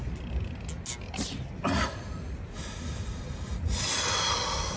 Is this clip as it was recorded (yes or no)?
yes